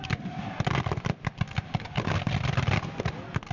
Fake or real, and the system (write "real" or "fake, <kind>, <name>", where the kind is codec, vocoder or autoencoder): real